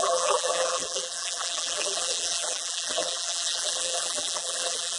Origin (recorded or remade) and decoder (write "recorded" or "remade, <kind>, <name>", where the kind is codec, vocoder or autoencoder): remade, vocoder, BigVGAN v2